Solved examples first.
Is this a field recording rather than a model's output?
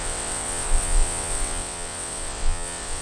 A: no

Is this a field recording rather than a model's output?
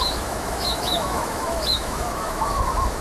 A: no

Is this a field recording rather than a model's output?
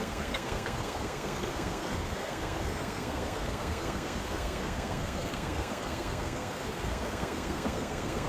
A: no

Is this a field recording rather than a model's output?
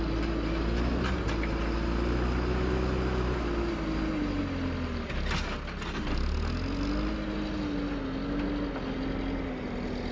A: yes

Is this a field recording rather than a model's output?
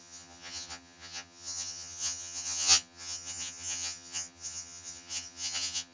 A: no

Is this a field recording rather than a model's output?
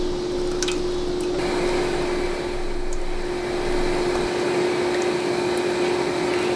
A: yes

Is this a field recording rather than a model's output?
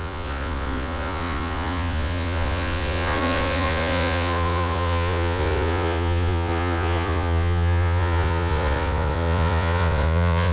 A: no